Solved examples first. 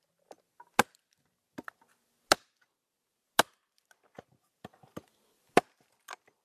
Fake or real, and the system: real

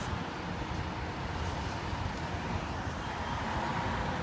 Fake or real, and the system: real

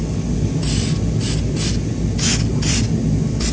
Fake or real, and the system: real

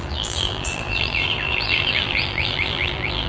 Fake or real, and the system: fake, vocoder, BigVGAN v2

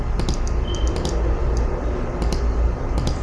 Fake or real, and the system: real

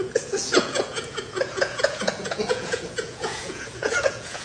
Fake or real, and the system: fake, vocoder, Vocos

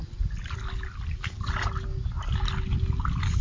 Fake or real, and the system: real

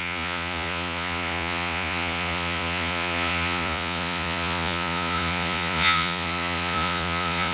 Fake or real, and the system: fake, vocoder, Vocos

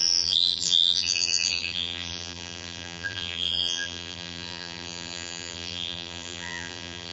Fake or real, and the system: fake, vocoder, BigVGAN v2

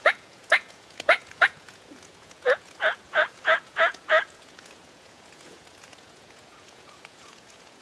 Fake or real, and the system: fake, vocoder, Vocos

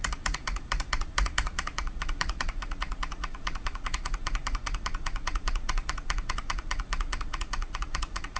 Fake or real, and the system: fake, vocoder, Vocos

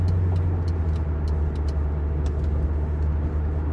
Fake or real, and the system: real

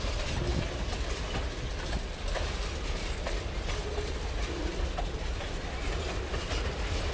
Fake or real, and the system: real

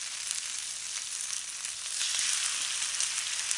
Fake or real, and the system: real